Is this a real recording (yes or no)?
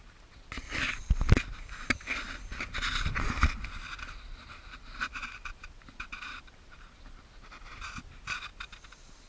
yes